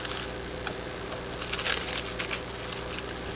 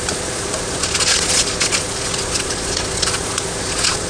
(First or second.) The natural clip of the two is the first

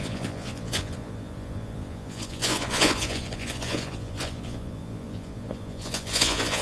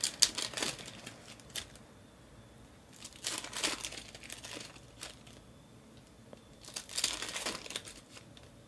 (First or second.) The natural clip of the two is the second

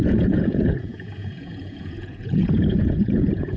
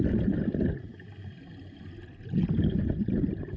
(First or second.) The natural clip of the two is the second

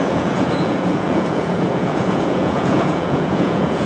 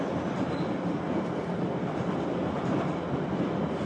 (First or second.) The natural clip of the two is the second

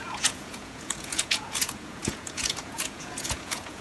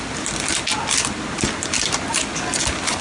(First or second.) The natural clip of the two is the second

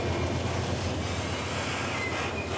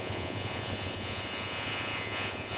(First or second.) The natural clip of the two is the first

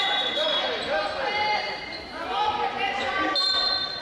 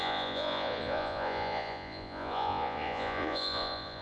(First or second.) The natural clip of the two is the first